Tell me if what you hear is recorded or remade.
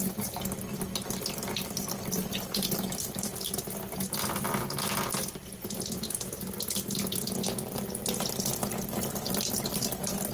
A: recorded